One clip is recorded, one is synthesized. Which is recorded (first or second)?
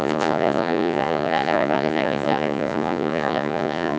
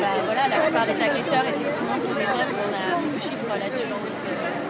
second